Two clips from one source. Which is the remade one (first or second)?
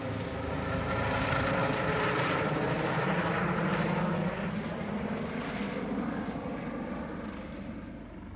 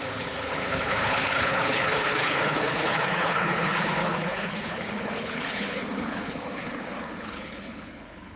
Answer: second